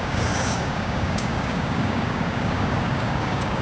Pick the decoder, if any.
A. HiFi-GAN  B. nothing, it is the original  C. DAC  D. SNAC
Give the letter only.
C